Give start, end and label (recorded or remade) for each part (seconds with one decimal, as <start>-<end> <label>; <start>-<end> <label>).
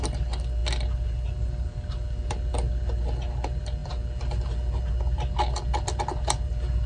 0.0-6.9 recorded